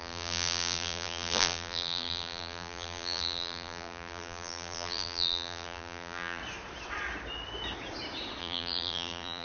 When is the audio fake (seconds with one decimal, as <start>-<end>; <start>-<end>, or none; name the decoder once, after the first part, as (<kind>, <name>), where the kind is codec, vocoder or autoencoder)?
0.0-6.4 (vocoder, BigVGAN v2); 8.4-9.4